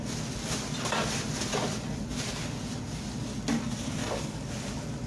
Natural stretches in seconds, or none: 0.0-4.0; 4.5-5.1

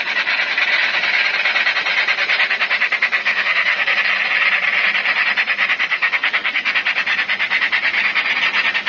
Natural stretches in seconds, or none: 0.0-3.2; 4.0-5.9; 6.7-8.9

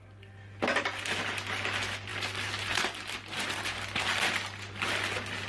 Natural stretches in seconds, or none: 0.0-4.1; 4.9-5.5